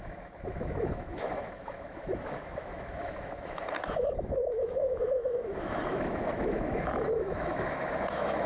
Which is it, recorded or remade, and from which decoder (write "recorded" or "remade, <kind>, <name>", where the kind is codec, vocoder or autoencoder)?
remade, autoencoder, DAC-VAE